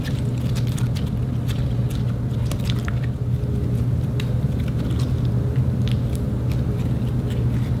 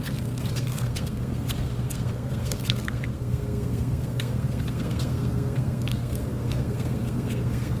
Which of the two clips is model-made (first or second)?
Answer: second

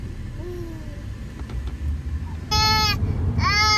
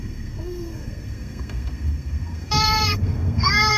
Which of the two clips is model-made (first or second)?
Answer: second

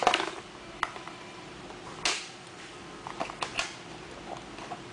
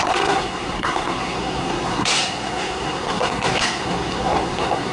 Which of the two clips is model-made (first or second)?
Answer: second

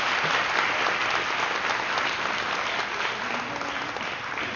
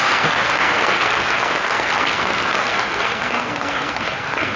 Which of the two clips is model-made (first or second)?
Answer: second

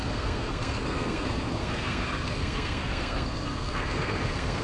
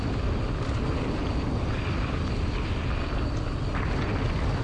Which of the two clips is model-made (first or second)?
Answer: first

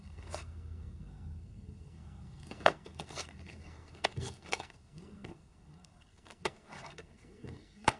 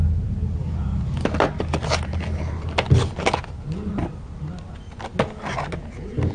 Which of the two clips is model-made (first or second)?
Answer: first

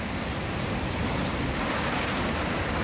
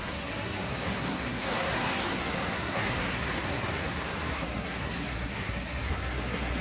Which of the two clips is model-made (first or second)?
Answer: second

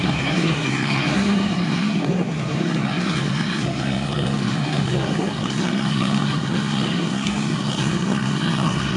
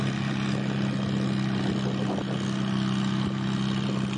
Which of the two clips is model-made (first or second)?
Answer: first